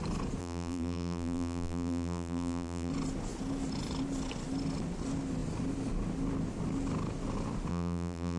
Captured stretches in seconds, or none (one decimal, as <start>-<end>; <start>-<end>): 0.0-0.4; 2.9-7.7